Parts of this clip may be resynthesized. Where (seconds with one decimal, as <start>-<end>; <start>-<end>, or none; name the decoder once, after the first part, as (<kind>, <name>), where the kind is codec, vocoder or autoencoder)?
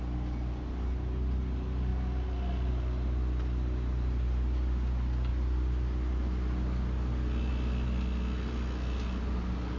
none